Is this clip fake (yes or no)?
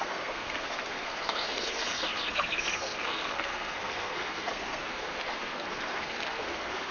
yes